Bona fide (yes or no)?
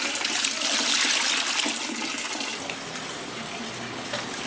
yes